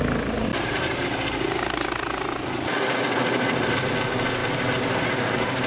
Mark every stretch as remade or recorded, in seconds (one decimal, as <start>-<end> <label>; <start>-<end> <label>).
0.0-5.7 recorded